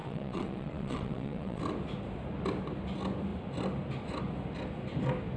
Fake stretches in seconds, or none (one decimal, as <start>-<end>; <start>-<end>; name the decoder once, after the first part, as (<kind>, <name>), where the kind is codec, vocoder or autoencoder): 0.0-1.6 (vocoder, WaveNeXt)